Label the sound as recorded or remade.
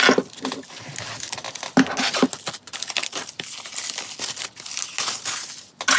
recorded